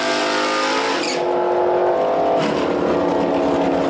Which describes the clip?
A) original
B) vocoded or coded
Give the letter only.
A